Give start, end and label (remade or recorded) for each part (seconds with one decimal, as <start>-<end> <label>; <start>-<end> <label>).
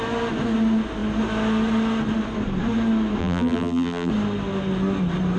0.0-3.2 recorded; 3.2-4.1 remade; 4.1-5.4 recorded